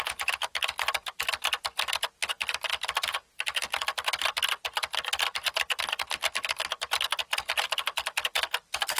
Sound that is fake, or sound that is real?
real